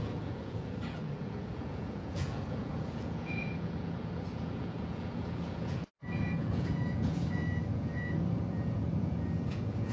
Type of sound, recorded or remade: remade